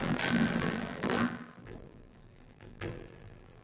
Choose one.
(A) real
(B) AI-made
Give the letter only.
B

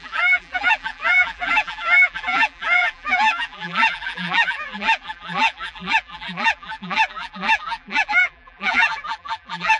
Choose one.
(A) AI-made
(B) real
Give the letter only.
A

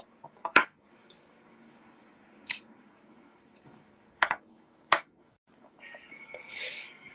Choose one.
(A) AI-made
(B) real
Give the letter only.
A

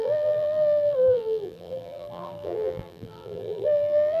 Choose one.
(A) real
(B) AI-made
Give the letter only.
B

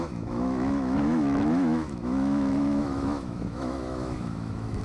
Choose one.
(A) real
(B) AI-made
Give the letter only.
B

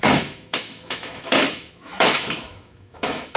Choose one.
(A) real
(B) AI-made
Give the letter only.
B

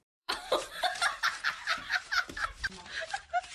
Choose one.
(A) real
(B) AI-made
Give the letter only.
B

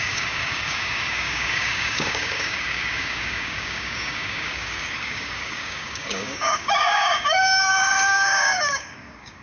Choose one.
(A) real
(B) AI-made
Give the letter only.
B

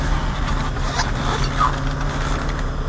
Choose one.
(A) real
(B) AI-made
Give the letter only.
A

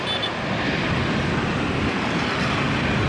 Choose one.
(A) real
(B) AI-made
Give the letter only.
A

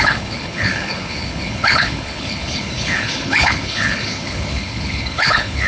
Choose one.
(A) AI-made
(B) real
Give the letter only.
A